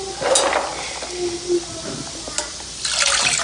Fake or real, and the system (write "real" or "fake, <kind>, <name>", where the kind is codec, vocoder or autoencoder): real